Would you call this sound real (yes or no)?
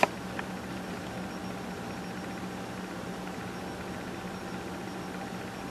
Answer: yes